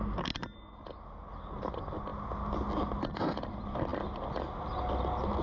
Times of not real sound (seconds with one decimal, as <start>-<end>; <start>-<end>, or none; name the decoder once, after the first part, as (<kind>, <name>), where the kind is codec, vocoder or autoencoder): none